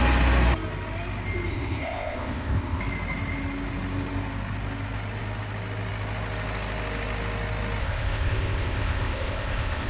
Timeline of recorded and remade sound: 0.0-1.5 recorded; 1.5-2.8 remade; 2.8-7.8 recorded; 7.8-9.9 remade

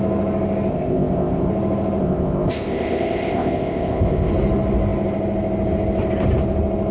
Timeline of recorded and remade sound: 0.0-0.7 recorded; 0.7-1.5 remade; 1.5-2.0 recorded; 2.0-4.3 remade; 4.3-6.9 recorded